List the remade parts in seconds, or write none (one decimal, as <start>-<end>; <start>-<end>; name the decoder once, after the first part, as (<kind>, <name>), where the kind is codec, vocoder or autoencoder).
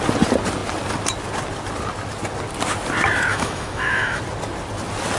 3.3-4.2 (autoencoder, DAC-VAE)